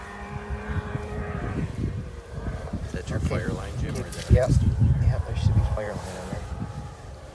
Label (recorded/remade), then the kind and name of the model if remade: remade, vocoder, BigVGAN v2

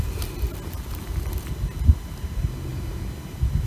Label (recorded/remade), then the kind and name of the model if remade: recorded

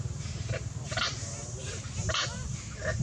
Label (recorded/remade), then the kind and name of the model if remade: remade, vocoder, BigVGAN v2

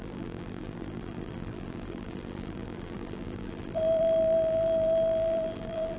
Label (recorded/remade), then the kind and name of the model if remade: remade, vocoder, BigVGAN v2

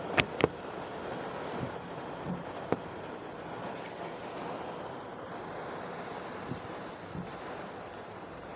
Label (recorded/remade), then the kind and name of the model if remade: remade, vocoder, BigVGAN v2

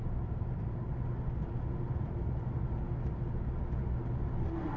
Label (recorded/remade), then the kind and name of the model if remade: recorded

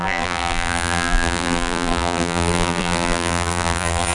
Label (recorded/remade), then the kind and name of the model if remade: remade, vocoder, BigVGAN v2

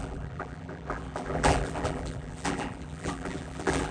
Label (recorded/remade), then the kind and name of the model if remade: remade, vocoder, BigVGAN v2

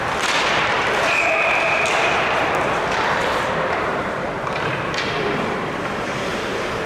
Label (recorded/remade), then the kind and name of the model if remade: remade, vocoder, BigVGAN v2